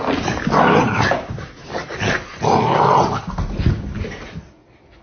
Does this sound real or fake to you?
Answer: fake